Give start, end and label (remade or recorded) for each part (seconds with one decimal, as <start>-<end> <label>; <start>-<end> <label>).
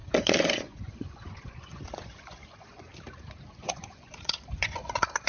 0.0-2.9 remade; 2.9-3.5 recorded; 3.5-5.3 remade